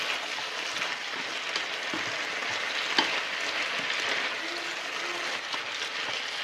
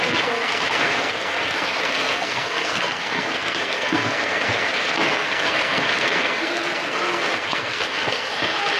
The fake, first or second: second